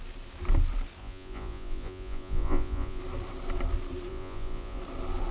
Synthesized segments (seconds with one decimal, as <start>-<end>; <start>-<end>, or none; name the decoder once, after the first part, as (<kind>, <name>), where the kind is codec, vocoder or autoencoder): 1.0-3.0 (vocoder, Vocos); 4.1-4.8